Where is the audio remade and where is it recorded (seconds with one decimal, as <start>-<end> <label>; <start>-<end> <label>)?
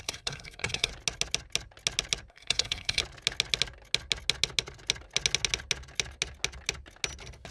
0.0-0.9 remade; 0.9-2.3 recorded; 2.3-3.0 remade; 3.0-7.5 recorded